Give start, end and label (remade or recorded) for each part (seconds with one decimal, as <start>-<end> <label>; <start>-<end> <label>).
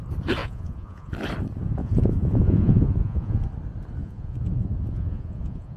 0.0-0.4 recorded; 0.4-1.1 remade; 1.1-1.8 recorded; 1.8-3.4 remade; 3.4-4.0 recorded; 4.0-5.8 remade